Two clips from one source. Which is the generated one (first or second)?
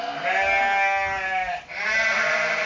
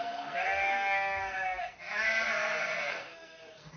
second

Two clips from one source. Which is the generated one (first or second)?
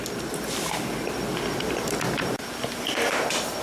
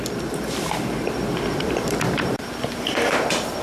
second